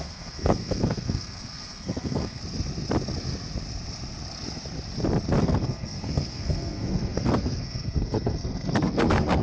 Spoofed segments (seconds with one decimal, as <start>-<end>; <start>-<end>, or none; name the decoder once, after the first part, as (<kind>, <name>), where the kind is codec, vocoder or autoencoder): 0.0-2.4 (codec, SNAC); 5.4-9.4